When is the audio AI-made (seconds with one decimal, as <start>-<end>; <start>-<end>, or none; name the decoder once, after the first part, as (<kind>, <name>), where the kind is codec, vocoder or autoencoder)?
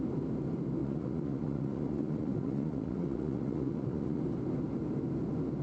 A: 0.8-4.2 (vocoder, Vocos)